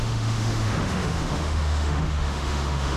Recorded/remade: remade